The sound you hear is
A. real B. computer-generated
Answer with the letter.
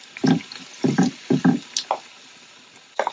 A